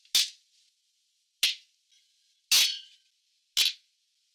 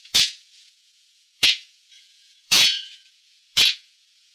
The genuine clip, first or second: first